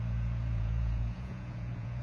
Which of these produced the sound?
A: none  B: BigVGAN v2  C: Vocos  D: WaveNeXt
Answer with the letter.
C